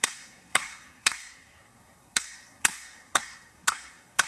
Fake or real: fake